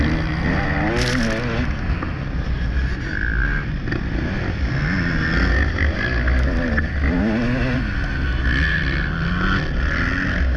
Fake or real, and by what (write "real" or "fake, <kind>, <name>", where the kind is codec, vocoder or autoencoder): real